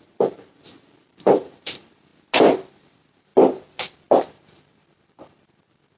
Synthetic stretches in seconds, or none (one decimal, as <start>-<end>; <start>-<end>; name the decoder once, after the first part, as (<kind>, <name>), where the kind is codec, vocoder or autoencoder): 0.0-2.1 (vocoder, BigVGAN v2); 2.7-3.3; 4.2-6.0